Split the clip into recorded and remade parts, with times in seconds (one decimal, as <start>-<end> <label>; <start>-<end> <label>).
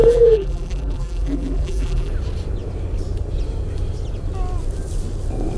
0.0-2.1 remade; 2.1-5.6 recorded